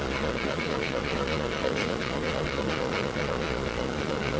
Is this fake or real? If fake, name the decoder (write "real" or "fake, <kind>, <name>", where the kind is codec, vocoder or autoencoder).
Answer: fake, vocoder, Vocos